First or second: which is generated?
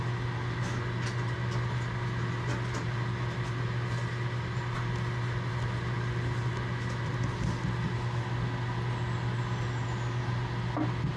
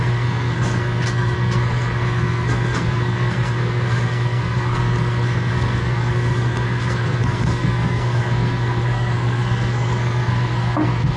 second